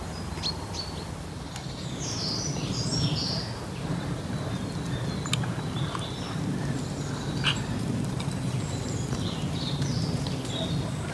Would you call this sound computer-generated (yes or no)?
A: no